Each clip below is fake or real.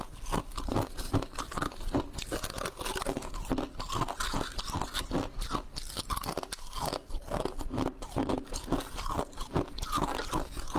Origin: real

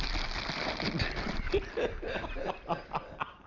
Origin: fake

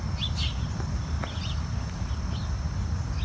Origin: real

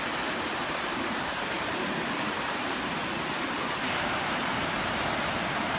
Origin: real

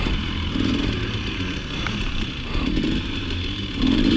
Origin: fake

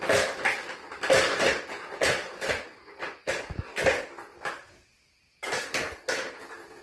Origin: real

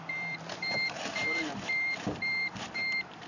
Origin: fake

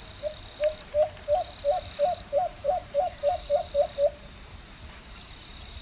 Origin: fake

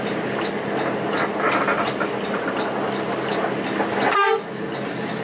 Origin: real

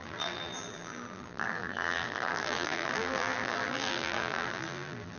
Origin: fake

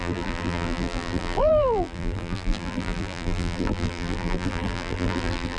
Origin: fake